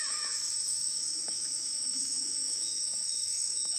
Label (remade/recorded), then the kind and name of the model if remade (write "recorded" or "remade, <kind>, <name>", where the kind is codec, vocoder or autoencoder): remade, autoencoder, DAC-VAE